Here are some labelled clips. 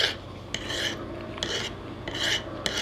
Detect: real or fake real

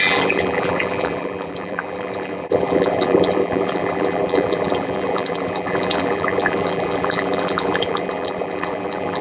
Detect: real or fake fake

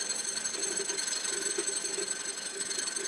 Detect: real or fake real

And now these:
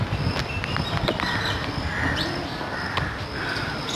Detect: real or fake real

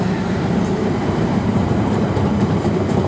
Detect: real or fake fake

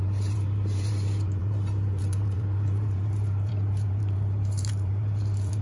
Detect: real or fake fake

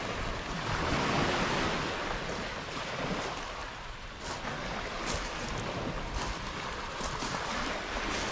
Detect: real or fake real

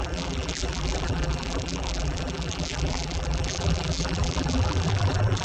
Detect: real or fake fake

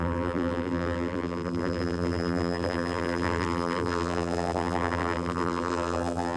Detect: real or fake fake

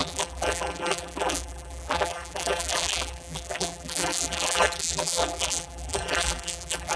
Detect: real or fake fake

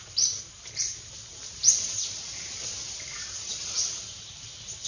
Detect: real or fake fake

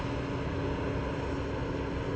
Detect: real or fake real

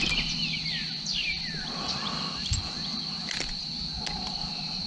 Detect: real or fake real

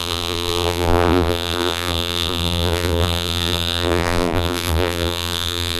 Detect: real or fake fake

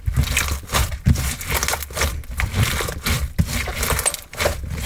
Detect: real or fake real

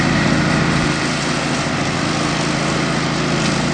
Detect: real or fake fake